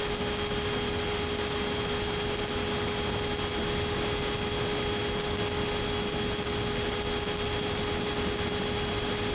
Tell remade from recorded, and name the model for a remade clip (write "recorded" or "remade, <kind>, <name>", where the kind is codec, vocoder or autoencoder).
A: recorded